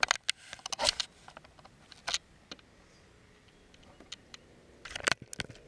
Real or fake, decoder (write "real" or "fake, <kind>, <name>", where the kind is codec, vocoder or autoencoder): real